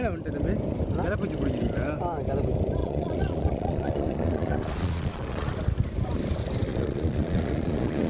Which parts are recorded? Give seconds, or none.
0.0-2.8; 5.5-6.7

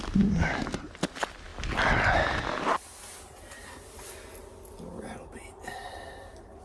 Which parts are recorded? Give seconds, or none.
0.0-6.6

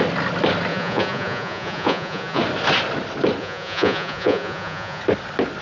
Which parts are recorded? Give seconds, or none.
0.0-0.7; 2.4-3.4; 5.0-5.6

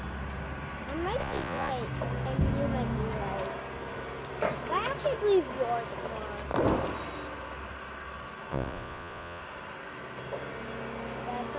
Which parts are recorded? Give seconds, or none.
0.0-1.2; 1.7-8.5; 9.4-11.6

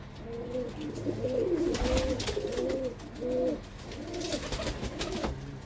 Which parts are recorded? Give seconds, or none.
0.0-5.7

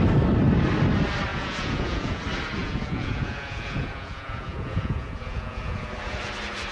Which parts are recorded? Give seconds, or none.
0.0-1.3; 2.2-2.6; 5.9-6.7

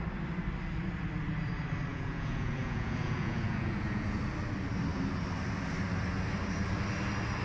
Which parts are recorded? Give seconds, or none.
0.0-1.9; 4.2-7.4